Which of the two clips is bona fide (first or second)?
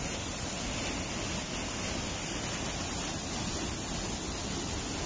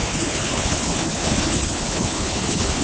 first